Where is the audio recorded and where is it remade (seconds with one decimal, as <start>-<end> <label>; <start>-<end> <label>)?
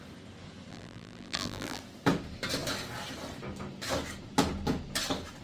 0.0-0.7 recorded; 0.7-1.8 remade; 1.8-5.4 recorded